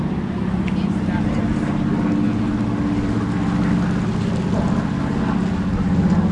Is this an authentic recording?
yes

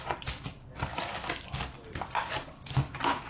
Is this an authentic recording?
yes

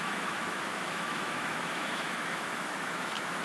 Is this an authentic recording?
no